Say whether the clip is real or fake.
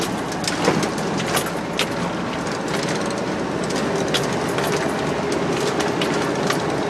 real